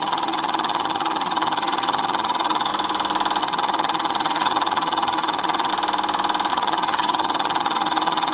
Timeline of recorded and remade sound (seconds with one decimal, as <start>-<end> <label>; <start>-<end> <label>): 0.0-2.7 remade; 2.7-3.4 recorded; 3.4-5.7 remade; 5.7-6.5 recorded; 6.5-8.3 remade